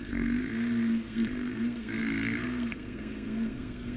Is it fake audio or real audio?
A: fake